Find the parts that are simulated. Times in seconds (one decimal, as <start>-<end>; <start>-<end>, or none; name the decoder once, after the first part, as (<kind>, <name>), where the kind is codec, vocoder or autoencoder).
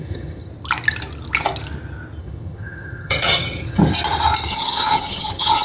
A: 0.0-0.5 (vocoder, HiFi-GAN); 2.2-3.8; 4.5-5.6